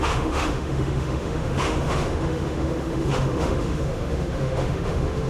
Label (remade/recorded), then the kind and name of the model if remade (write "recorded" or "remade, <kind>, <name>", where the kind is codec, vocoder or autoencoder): remade, autoencoder, DAC-VAE